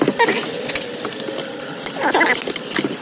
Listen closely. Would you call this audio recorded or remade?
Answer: recorded